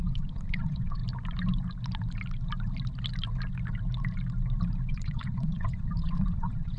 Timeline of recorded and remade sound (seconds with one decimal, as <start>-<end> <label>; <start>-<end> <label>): 0.0-1.0 remade; 1.0-4.9 recorded; 4.9-6.8 remade

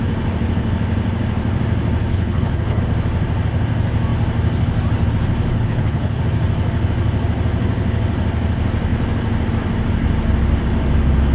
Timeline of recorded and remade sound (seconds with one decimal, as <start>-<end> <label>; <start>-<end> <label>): 0.0-2.1 recorded; 2.1-2.8 remade; 2.8-5.5 recorded; 5.5-6.2 remade; 6.2-11.3 recorded

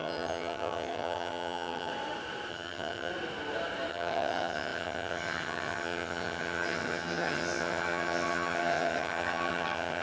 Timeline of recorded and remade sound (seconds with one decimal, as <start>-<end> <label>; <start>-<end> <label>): 0.0-1.9 remade; 1.9-2.5 recorded; 2.5-3.1 remade; 3.1-3.9 recorded; 3.9-10.0 remade

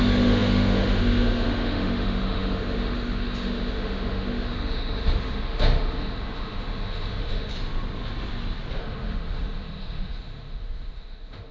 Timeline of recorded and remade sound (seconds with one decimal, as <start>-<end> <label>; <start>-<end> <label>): 0.0-7.5 remade; 7.5-8.8 recorded; 8.8-11.5 remade

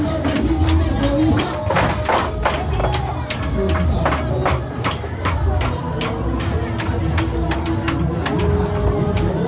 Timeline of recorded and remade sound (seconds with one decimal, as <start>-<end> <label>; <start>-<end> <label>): 0.0-9.5 recorded